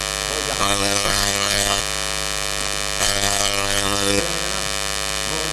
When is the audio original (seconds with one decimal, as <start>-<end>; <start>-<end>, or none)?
0.0-0.6; 1.8-3.0; 4.2-5.5